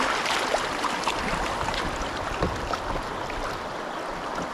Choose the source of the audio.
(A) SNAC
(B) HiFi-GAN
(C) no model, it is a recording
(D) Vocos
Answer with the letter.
C